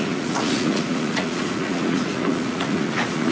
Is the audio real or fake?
fake